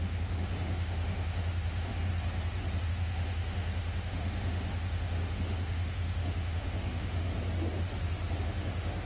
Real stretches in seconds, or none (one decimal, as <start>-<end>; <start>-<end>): 2.1-2.8; 7.3-8.4